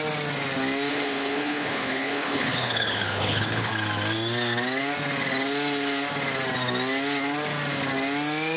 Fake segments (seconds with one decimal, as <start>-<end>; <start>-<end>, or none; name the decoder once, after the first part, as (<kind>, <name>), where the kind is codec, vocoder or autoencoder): 0.9-3.7 (codec, HILCodec)